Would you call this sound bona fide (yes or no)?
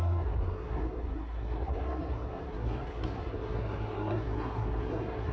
no